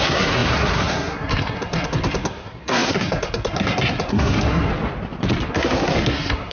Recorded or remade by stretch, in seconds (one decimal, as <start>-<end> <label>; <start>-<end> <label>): 0.0-4.7 remade; 4.7-5.5 recorded; 5.5-6.5 remade